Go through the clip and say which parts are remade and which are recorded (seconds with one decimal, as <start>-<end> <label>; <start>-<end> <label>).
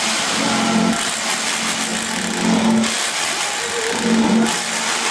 0.0-5.1 recorded